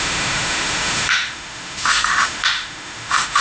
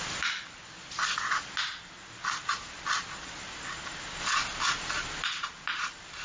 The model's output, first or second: first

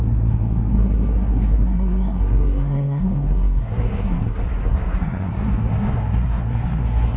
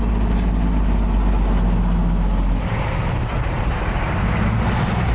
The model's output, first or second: first